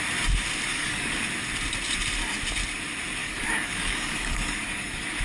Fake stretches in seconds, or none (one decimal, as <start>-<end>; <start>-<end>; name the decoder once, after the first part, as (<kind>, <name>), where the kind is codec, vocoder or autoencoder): 0.7-1.2 (codec, DAC); 3.2-5.2